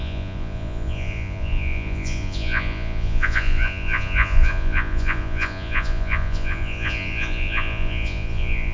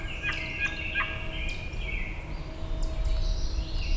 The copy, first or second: first